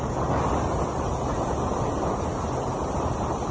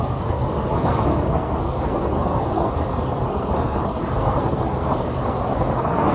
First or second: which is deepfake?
second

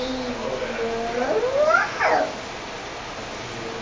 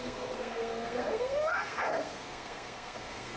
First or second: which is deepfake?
second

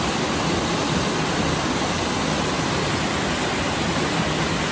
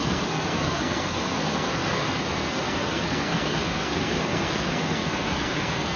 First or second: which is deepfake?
second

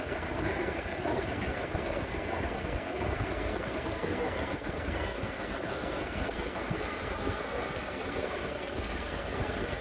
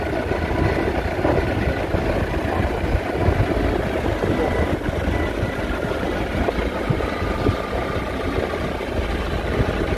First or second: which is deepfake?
first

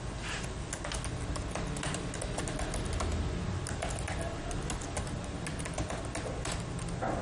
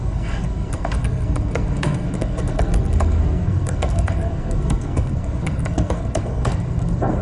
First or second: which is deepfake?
second